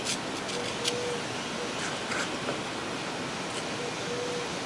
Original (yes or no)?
yes